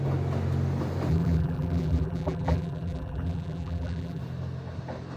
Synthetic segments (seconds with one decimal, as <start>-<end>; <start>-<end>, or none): 1.1-4.2